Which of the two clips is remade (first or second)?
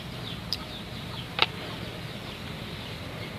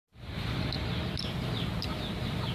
first